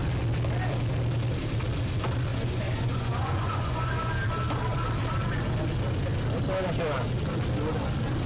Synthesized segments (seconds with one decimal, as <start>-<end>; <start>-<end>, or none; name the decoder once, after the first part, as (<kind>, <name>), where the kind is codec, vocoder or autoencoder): 2.3-4.1 (vocoder, Vocos)